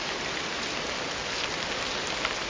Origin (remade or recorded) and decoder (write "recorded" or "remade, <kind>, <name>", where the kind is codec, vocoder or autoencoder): recorded